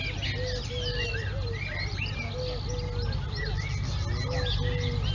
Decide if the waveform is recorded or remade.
recorded